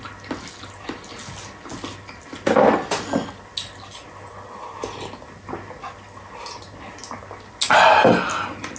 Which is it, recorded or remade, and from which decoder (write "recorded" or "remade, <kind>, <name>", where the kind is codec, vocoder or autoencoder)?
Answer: recorded